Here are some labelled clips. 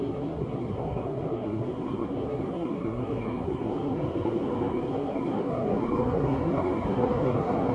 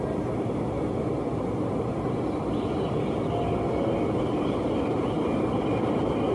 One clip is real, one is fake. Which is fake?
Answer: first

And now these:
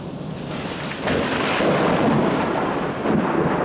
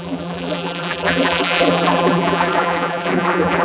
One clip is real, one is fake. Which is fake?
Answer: second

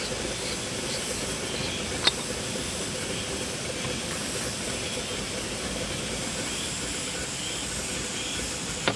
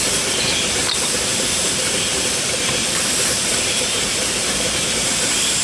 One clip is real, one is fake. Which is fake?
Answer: second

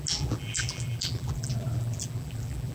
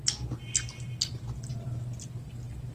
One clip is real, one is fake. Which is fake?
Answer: first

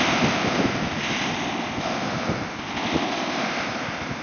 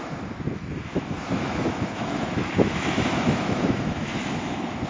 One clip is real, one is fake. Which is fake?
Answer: second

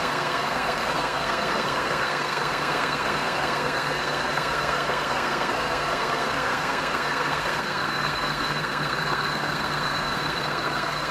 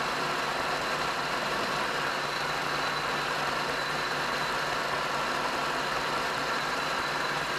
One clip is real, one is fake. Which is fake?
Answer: first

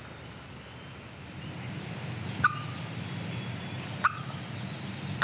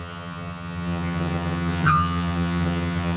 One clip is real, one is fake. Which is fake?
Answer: second